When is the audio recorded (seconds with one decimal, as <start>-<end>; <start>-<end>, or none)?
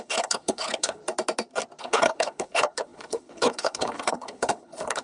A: 1.0-1.8